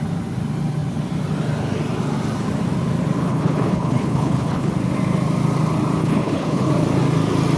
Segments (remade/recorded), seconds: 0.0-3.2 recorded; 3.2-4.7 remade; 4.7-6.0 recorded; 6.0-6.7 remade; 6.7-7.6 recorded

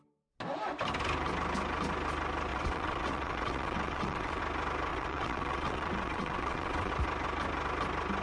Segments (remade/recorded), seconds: 0.0-2.5 recorded; 2.5-4.4 remade; 4.4-4.9 recorded; 4.9-6.9 remade; 6.9-8.2 recorded